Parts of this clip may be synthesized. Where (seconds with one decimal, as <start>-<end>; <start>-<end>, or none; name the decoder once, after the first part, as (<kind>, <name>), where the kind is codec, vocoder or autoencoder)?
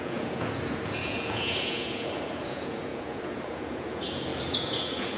0.0-5.2 (vocoder, Vocos)